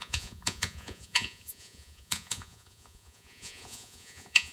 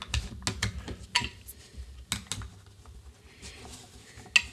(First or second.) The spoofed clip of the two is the first